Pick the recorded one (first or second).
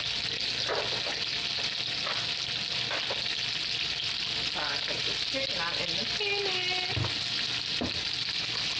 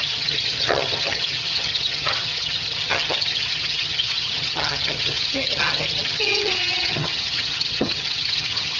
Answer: first